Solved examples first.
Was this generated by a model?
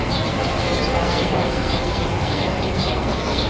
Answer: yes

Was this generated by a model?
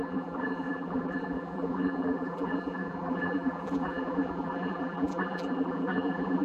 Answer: yes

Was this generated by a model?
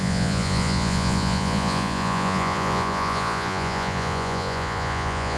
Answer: yes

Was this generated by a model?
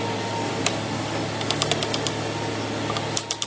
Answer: no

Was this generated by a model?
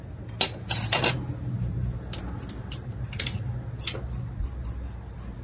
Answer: no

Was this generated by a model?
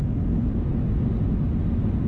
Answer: no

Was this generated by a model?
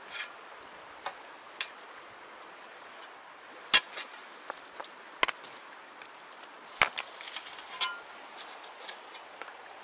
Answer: no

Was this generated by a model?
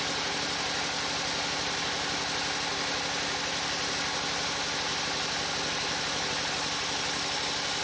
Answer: no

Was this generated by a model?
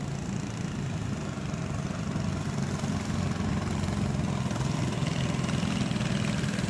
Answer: no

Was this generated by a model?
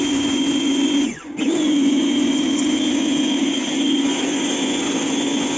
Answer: yes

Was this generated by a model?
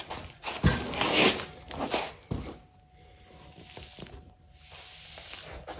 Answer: no